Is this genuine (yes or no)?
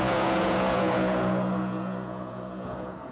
no